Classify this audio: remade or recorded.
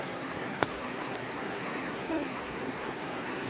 remade